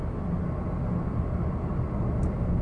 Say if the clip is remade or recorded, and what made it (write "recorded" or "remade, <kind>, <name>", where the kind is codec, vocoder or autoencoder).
recorded